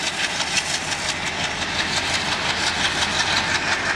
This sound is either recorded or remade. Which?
recorded